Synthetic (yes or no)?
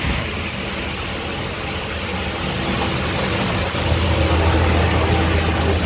no